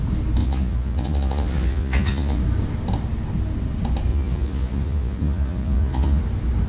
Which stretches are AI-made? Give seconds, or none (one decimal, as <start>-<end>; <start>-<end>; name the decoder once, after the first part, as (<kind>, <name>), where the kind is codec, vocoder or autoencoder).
0.4-2.4 (vocoder, Vocos); 4.1-6.2

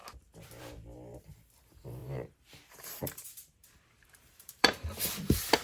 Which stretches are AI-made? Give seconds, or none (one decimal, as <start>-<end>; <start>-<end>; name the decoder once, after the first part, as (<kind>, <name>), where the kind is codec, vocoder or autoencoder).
2.0-4.9 (vocoder, BigVGAN v2)

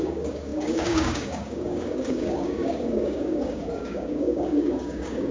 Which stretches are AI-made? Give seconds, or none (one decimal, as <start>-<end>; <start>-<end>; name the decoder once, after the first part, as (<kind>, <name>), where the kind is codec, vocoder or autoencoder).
0.0-5.3 (codec, DAC)

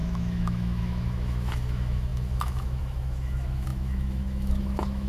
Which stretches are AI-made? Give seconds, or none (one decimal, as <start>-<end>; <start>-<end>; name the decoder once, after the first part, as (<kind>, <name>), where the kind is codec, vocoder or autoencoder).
0.0-5.1 (autoencoder, DAC-VAE)

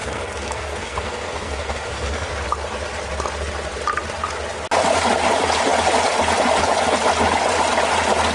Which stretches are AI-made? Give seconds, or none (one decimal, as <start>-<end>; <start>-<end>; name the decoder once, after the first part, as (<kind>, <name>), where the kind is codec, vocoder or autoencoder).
0.0-2.3 (codec, SNAC)

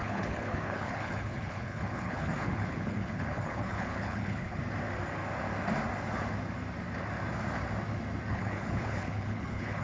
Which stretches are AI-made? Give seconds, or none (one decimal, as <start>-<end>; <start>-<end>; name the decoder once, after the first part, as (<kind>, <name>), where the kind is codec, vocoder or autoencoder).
0.0-4.6 (codec, HILCodec); 8.3-9.8

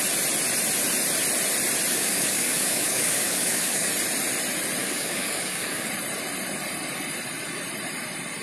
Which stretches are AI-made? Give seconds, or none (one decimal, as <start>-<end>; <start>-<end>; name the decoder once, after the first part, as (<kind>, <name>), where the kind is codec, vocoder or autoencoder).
1.9-3.9 (codec, DAC); 4.8-5.9